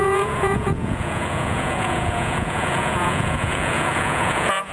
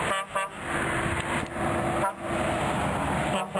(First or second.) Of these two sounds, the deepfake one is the first